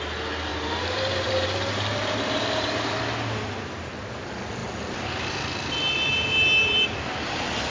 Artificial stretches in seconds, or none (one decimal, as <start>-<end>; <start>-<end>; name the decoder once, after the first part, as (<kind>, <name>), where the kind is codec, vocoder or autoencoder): 0.5-3.0 (vocoder, BigVGAN v2)